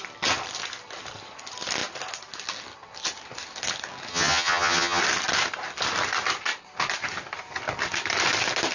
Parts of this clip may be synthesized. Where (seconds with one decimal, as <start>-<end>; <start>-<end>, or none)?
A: 4.1-5.0